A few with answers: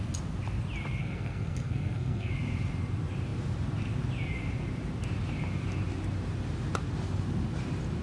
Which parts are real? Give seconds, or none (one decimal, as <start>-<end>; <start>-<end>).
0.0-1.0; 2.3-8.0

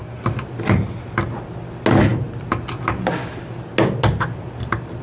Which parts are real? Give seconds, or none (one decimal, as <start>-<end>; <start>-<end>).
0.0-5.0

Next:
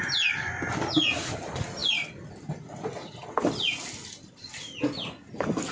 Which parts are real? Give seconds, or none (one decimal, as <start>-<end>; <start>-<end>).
0.0-5.7